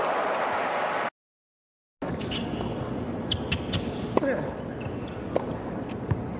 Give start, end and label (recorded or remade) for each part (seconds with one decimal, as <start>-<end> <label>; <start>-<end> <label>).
0.0-6.4 recorded